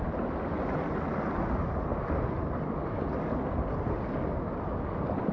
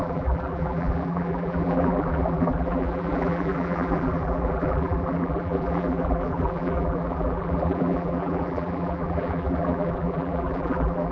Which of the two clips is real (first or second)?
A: first